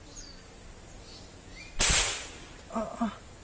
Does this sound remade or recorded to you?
recorded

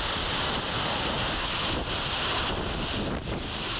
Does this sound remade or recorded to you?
recorded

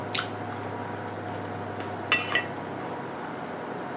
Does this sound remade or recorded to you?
recorded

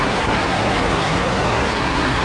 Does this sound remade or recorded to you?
remade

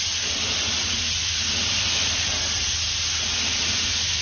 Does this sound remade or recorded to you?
recorded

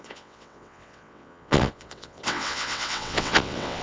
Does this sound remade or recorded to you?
remade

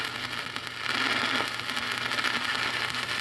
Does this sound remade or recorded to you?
recorded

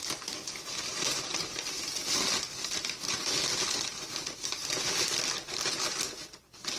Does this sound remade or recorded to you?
recorded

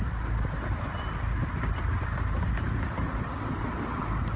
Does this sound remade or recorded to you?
recorded